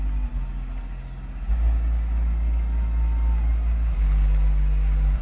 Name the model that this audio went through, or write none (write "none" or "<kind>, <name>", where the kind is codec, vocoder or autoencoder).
none